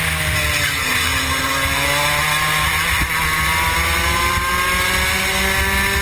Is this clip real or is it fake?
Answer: real